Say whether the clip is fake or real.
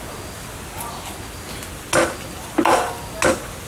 real